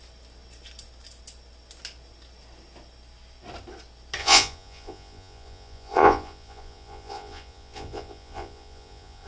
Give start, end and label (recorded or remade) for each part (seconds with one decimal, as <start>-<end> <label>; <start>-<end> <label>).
0.0-4.2 recorded; 4.2-9.3 remade